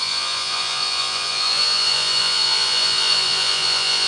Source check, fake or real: fake